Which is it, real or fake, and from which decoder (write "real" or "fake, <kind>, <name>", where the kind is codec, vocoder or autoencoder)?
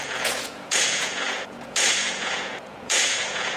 fake, vocoder, Vocos